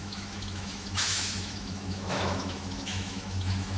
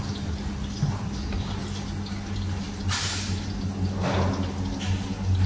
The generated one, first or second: first